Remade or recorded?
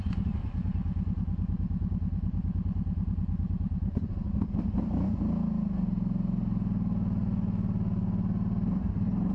recorded